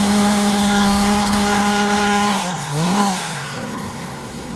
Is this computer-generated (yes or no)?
yes